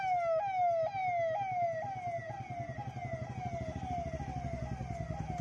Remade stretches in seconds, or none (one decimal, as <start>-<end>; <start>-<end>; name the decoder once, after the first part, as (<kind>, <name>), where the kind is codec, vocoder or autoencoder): none